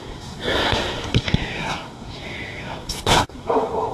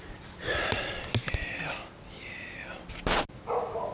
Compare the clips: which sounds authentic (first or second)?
second